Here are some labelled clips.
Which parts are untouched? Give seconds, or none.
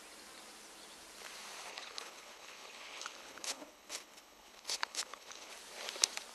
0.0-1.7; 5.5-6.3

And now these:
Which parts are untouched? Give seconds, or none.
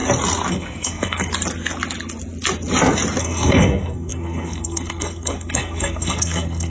0.0-0.5; 1.3-3.2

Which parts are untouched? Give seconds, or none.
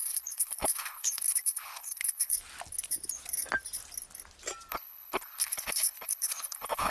2.3-4.7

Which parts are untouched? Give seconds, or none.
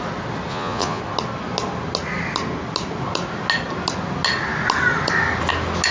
0.0-0.5; 1.0-5.9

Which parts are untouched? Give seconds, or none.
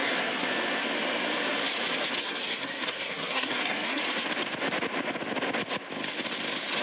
0.5-2.2; 4.0-6.8